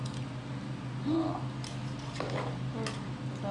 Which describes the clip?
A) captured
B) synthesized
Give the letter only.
A